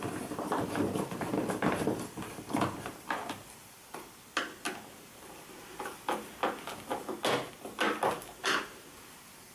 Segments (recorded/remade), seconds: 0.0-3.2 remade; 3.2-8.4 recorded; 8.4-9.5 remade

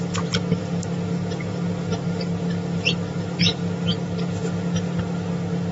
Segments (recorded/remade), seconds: 0.0-3.9 remade; 3.9-5.7 recorded

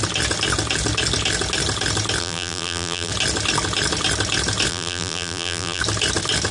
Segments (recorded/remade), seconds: 0.0-2.2 recorded; 2.2-3.1 remade; 3.1-4.7 recorded; 4.7-5.8 remade; 5.8-6.5 recorded